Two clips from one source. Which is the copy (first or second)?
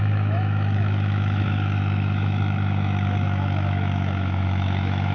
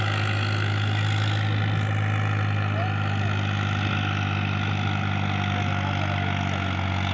first